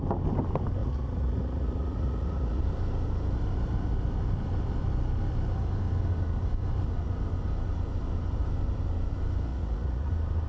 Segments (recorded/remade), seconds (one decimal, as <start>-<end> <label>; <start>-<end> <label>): 0.0-0.8 recorded; 0.8-2.6 remade; 2.6-9.5 recorded; 9.5-10.1 remade; 10.1-10.5 recorded